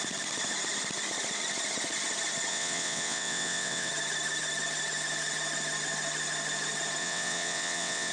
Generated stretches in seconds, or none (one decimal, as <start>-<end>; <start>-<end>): 2.5-3.9; 7.0-8.1